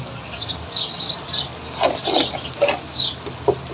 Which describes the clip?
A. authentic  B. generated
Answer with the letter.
A